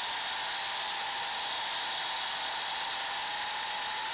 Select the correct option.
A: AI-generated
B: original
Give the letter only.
B